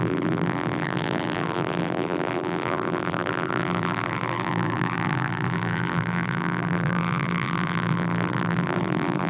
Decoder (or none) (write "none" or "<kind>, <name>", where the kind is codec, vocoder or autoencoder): vocoder, BigVGAN v2